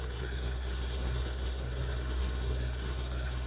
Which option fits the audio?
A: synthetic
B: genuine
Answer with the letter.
A